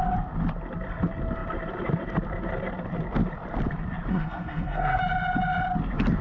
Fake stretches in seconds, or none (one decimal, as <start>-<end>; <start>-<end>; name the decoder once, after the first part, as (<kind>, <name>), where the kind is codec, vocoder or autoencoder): 4.1-5.0 (codec, SNAC)